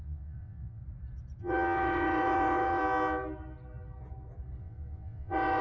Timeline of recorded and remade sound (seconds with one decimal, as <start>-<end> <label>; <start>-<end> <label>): 0.0-0.8 remade; 0.8-1.4 recorded; 1.4-2.8 remade; 2.8-4.6 recorded; 4.6-5.6 remade